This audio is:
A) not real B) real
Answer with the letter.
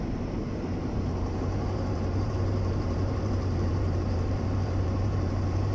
A